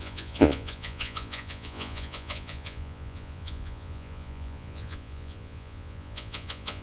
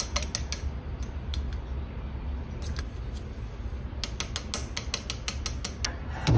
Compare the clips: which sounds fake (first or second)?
first